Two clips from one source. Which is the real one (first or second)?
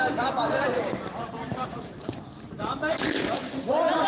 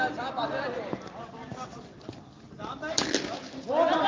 second